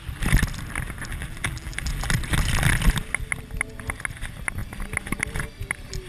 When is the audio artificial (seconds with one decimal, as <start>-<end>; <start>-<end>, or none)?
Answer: 1.1-2.1